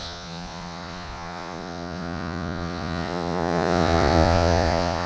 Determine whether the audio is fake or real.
fake